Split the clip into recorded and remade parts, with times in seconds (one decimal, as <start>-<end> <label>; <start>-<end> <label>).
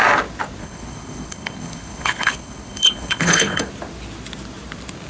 0.0-0.6 recorded; 0.6-3.7 remade; 3.7-5.1 recorded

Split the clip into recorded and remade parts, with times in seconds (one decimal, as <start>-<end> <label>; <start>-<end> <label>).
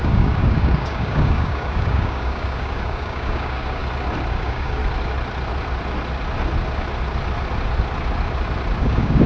0.0-3.8 remade; 3.8-4.3 recorded; 4.3-4.8 remade; 4.8-8.8 recorded; 8.8-9.3 remade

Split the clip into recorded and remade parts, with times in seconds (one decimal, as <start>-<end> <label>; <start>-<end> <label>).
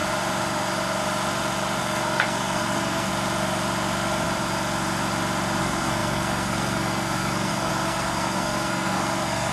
0.0-1.8 recorded; 1.8-3.1 remade; 3.1-5.6 recorded; 5.6-9.5 remade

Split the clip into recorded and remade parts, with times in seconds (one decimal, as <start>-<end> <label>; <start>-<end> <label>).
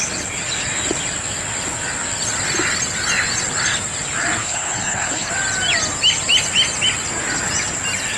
0.0-4.4 recorded; 4.4-5.3 remade; 5.3-8.2 recorded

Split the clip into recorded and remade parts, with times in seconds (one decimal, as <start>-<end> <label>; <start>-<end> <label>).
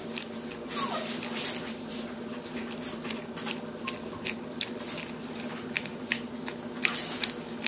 0.0-5.2 recorded; 5.2-5.9 remade; 5.9-7.7 recorded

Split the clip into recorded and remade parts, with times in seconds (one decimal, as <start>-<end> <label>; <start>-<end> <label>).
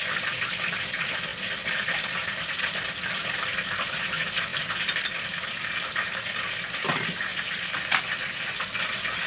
0.0-9.3 recorded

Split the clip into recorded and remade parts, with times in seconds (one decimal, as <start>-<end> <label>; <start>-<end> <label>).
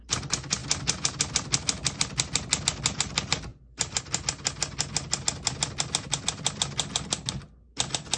0.0-3.5 recorded; 3.5-4.0 remade; 4.0-8.2 recorded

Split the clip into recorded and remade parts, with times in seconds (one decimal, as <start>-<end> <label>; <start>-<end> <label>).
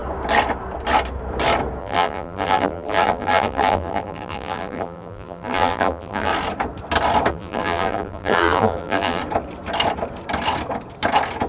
0.0-1.8 recorded; 1.8-6.3 remade; 6.3-7.3 recorded; 7.3-9.2 remade; 9.2-11.5 recorded